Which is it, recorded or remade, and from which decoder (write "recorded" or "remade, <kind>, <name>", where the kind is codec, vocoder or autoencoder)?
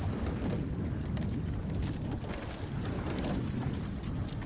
recorded